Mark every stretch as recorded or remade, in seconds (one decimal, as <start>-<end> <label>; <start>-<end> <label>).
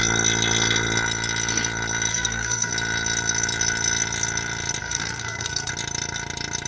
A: 0.0-2.1 recorded; 2.1-2.7 remade; 2.7-4.8 recorded; 4.8-5.7 remade; 5.7-6.7 recorded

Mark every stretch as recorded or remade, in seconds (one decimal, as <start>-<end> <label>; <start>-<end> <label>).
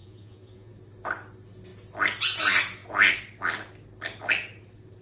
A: 0.0-0.7 remade; 0.7-5.0 recorded